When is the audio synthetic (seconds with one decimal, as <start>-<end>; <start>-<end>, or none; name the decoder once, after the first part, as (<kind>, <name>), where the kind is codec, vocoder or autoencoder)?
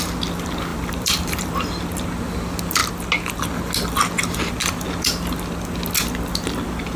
0.7-1.5 (vocoder, BigVGAN v2)